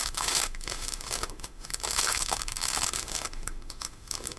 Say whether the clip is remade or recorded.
remade